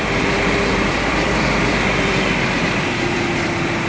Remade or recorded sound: remade